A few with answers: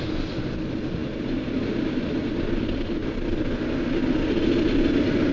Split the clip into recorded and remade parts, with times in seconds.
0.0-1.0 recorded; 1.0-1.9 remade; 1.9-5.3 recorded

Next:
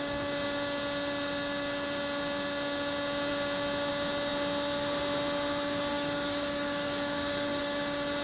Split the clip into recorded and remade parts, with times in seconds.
0.0-5.9 recorded; 5.9-7.6 remade; 7.6-8.2 recorded